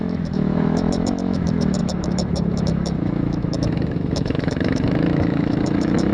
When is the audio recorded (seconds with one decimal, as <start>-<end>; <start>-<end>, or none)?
none